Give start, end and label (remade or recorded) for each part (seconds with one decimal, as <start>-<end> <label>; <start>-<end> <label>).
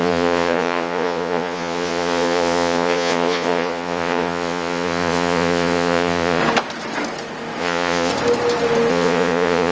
0.0-6.4 remade; 6.4-7.6 recorded; 7.6-8.1 remade; 8.1-8.9 recorded; 8.9-9.7 remade